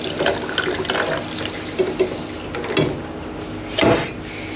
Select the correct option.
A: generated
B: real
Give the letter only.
B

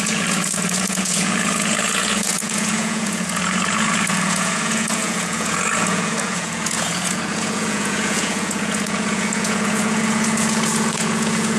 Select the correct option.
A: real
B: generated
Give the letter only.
B